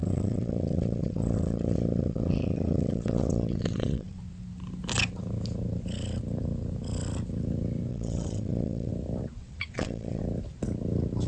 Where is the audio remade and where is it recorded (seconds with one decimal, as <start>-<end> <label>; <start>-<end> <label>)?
0.0-4.2 remade; 4.2-7.9 recorded; 7.9-8.9 remade; 8.9-9.4 recorded; 9.4-10.2 remade; 10.2-11.3 recorded